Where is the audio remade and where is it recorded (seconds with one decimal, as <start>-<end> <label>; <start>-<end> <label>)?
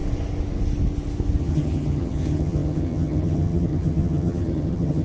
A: 0.0-1.4 recorded; 1.4-5.0 remade